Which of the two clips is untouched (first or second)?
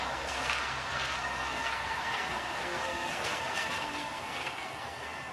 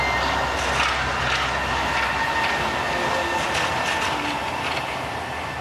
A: second